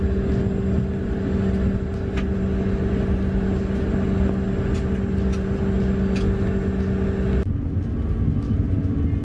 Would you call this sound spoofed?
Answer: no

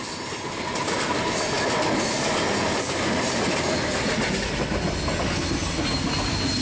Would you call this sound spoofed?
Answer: no